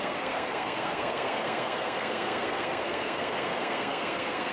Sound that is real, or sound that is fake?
fake